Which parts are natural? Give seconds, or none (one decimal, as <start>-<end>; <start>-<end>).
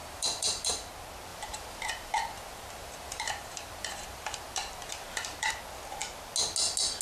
0.9-1.3; 5.5-7.0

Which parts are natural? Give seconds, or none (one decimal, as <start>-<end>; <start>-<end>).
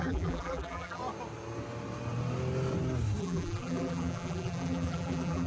1.0-3.2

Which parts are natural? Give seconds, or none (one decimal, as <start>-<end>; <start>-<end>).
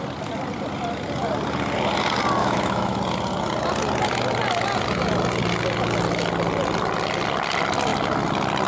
0.0-2.4; 3.0-8.7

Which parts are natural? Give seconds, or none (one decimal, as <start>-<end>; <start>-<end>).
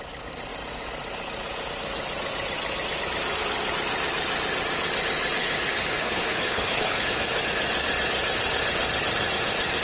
0.0-5.4; 7.4-9.8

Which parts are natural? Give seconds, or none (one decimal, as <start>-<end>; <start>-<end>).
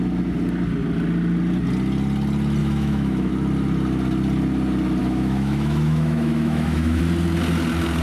0.0-2.6; 3.3-5.0; 7.0-8.0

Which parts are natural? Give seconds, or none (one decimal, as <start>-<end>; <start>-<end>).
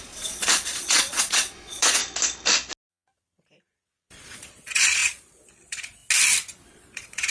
2.0-2.9; 6.0-6.7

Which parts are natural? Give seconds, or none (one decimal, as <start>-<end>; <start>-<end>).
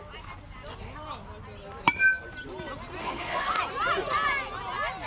0.0-3.0; 3.6-5.1